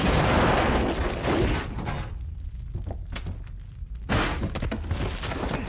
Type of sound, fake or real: real